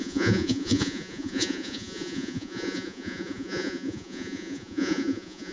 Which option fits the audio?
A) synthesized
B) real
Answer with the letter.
A